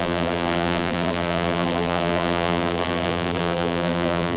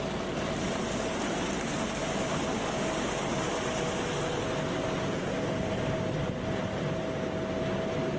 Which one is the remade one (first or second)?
first